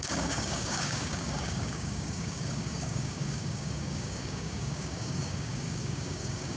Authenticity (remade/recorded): remade